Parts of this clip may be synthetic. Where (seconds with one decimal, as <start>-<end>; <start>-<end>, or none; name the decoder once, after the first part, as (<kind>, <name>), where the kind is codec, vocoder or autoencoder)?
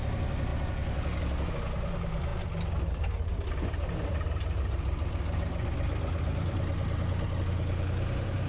none